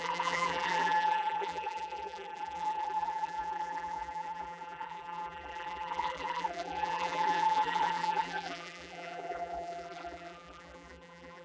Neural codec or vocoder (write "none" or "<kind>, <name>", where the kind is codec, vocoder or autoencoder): vocoder, BigVGAN v2